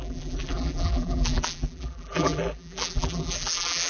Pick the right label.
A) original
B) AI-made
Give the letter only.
B